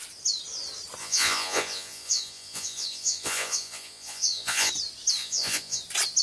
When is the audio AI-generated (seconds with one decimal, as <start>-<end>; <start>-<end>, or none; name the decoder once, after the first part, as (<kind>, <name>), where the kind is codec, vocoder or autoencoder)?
1.0-4.7 (vocoder, Vocos); 5.2-5.8